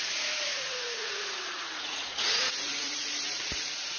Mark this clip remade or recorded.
remade